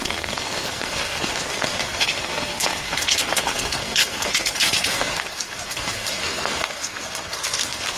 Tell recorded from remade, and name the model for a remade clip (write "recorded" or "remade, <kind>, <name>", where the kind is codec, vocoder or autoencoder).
remade, codec, SNAC